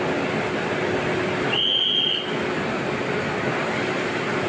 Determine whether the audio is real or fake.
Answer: real